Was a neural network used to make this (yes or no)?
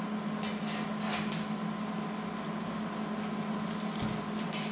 no